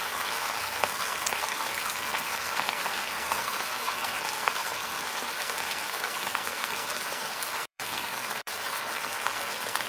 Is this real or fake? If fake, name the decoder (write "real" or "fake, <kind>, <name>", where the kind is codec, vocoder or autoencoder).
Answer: fake, codec, SNAC